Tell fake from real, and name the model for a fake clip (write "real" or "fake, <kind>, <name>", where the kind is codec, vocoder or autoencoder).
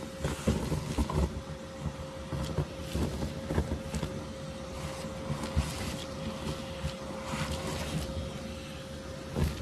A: real